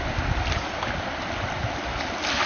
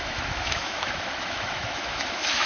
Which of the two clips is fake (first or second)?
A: second